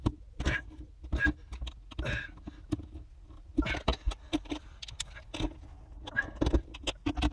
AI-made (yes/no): no